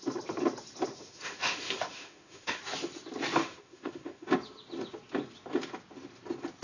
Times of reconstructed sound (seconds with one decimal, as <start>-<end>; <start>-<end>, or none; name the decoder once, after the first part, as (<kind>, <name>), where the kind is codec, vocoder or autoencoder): 0.9-2.6 (autoencoder, DAC-VAE); 3.4-4.3